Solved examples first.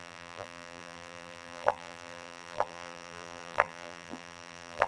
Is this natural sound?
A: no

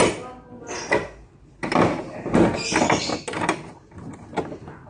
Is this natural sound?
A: yes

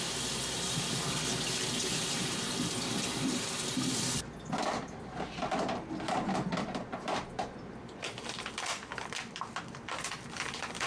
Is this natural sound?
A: no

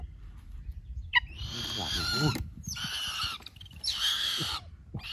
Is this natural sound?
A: no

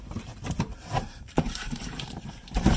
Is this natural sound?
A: no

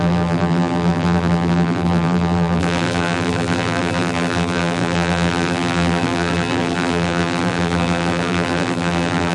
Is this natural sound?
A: no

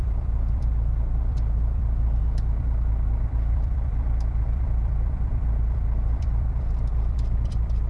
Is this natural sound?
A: no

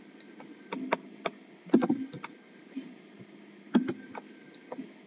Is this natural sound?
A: no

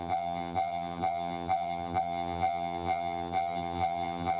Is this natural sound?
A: no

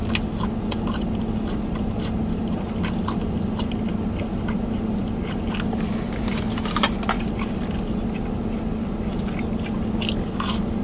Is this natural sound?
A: yes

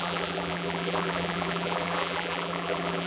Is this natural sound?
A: no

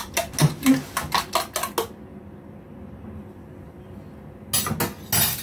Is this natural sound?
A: yes